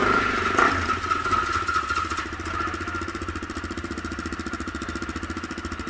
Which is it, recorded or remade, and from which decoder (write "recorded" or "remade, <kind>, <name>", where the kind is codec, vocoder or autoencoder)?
recorded